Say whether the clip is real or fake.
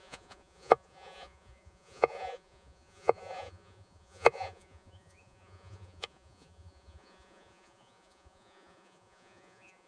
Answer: fake